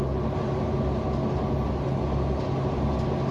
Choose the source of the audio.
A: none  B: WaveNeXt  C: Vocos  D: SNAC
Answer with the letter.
A